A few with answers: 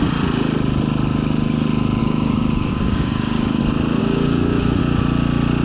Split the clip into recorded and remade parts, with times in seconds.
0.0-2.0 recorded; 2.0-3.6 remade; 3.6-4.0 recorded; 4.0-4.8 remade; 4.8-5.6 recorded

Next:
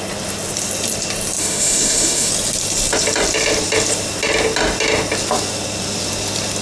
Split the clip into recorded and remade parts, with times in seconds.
0.0-1.4 recorded; 1.4-2.3 remade; 2.3-6.6 recorded

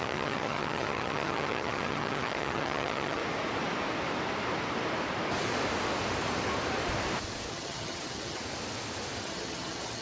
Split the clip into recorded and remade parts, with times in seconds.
0.0-3.2 remade; 3.2-7.5 recorded; 7.5-8.4 remade; 8.4-9.2 recorded; 9.2-10.0 remade

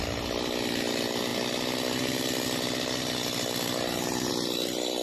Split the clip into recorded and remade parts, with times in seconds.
0.0-5.0 recorded

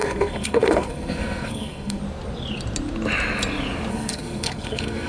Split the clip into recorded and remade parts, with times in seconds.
0.0-2.0 remade; 2.0-3.9 recorded; 3.9-5.1 remade

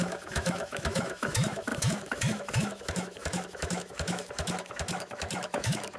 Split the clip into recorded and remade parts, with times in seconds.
0.0-6.0 remade

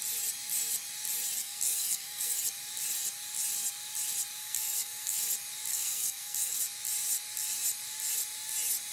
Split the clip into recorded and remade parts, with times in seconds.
0.0-1.4 recorded; 1.4-2.4 remade; 2.4-4.4 recorded; 4.4-5.2 remade; 5.2-5.7 recorded; 5.7-6.6 remade; 6.6-8.9 recorded